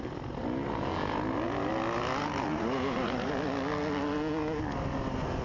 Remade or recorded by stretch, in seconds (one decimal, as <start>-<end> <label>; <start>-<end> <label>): 0.0-2.5 recorded; 2.5-3.3 remade; 3.3-5.4 recorded